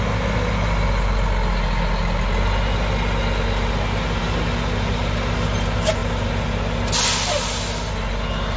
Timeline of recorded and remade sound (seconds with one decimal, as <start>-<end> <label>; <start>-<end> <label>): 0.0-8.6 recorded

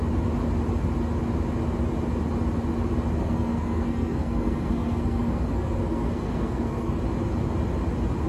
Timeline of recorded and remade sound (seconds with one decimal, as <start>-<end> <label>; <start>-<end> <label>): 0.0-3.2 recorded; 3.2-7.0 remade; 7.0-8.3 recorded